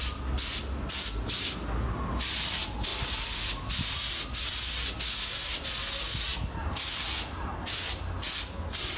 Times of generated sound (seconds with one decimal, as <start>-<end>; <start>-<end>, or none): none